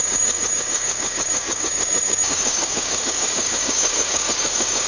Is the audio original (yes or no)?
no